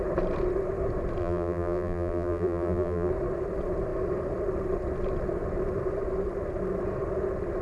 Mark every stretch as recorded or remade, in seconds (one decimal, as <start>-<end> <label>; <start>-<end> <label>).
0.0-1.2 recorded; 1.2-3.1 remade; 3.1-7.6 recorded